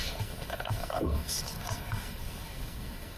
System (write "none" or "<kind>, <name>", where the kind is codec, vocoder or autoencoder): codec, SNAC